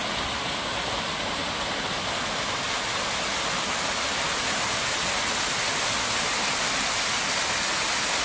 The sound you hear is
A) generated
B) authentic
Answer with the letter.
B